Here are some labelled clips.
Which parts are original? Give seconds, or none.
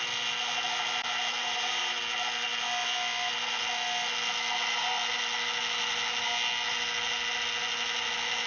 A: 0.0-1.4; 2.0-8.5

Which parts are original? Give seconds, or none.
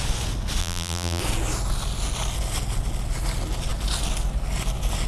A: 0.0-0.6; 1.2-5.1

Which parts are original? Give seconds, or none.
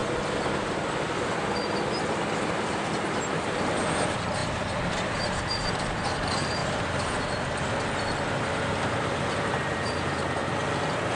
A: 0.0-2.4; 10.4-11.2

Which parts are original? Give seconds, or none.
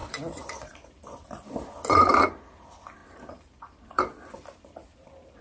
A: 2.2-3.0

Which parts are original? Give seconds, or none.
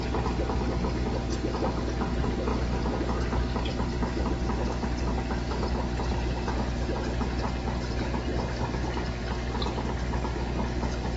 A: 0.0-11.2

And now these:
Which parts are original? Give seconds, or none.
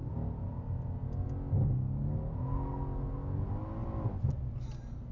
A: 0.0-3.8; 4.4-5.1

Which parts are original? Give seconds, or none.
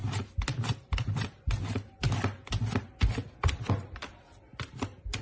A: 0.0-5.2